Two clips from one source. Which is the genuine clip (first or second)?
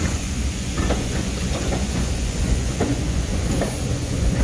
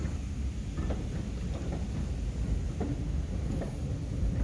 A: second